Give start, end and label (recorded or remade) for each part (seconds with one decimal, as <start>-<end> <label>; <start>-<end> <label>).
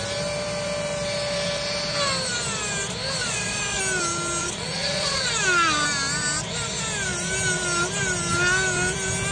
0.0-3.2 recorded; 3.2-3.8 remade; 3.8-4.4 recorded; 4.4-5.3 remade; 5.3-9.3 recorded